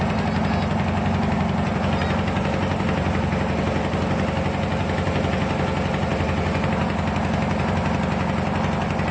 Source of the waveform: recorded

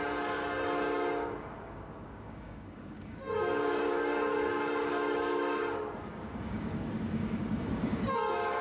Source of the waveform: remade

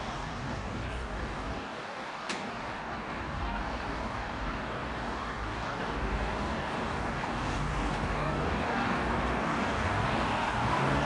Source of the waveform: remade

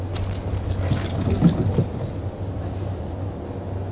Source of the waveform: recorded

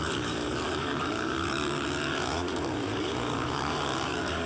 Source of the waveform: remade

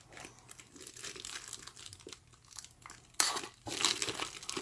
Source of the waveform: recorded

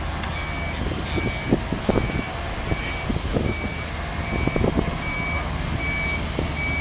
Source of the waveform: recorded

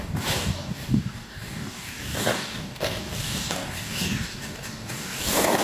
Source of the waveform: remade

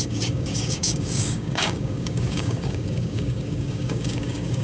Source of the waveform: remade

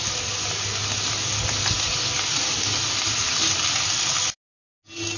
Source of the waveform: recorded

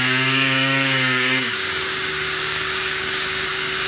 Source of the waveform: remade